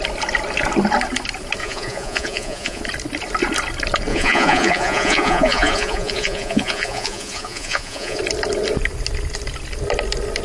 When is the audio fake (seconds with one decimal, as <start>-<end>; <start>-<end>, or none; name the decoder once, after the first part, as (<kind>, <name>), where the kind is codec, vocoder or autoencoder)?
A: 1.6-2.8 (vocoder, Vocos); 4.1-8.2